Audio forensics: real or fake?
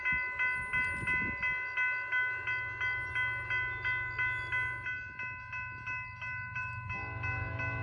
real